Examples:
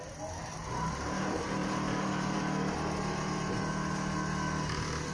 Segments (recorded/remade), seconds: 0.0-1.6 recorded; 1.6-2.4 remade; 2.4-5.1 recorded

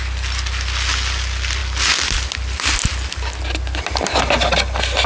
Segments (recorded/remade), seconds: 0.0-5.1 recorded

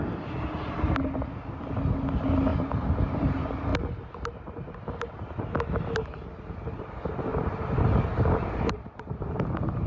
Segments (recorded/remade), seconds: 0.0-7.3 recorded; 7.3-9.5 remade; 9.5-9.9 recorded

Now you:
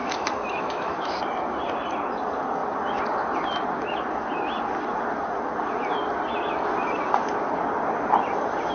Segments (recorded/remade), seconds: 0.0-1.2 remade; 1.2-8.7 recorded